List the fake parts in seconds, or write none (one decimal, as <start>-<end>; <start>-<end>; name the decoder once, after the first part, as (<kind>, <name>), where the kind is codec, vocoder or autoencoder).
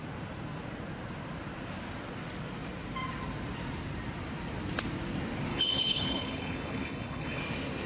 5.5-7.4 (codec, HILCodec)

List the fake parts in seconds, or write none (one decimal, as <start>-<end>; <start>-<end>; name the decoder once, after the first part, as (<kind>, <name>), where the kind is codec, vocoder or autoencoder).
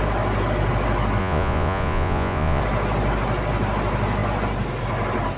1.2-2.6 (vocoder, Vocos)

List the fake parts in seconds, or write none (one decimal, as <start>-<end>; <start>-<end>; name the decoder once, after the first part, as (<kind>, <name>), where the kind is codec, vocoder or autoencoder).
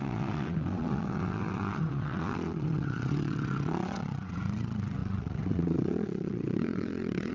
0.0-7.3 (vocoder, WaveNeXt)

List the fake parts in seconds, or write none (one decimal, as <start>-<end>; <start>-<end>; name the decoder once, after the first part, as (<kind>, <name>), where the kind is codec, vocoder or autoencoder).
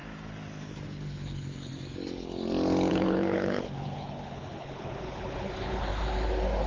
0.6-1.7 (codec, HILCodec); 2.9-5.9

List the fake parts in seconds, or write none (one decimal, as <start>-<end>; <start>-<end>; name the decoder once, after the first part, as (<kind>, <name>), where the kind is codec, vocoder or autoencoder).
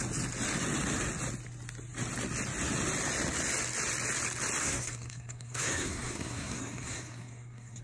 4.6-7.8 (codec, SNAC)